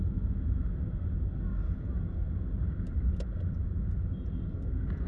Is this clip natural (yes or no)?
yes